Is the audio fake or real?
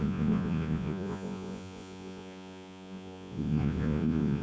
fake